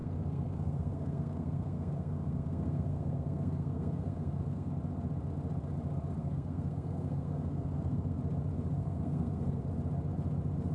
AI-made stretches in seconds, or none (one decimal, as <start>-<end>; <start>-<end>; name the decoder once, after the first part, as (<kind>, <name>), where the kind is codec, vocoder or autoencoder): 0.0-4.7 (codec, SNAC); 6.2-8.2; 8.8-9.6